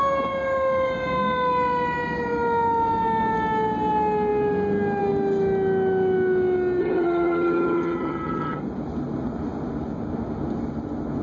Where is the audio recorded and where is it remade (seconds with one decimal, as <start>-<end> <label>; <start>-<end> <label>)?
0.0-6.8 recorded; 6.8-8.6 remade; 8.6-11.2 recorded